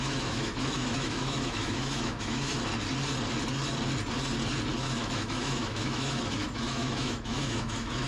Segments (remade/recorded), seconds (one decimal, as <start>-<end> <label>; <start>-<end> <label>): 0.0-2.5 remade; 2.5-4.8 recorded; 4.8-8.1 remade